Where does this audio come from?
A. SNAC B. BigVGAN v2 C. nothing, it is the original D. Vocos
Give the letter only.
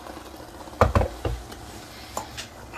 C